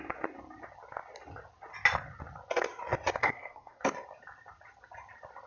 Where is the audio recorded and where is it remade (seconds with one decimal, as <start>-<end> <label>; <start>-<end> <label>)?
0.0-3.2 recorded; 3.2-3.8 remade; 3.8-5.5 recorded